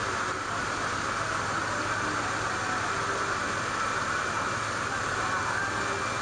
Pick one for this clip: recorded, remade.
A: recorded